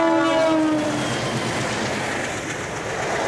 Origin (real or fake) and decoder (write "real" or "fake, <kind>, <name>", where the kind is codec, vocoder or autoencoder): real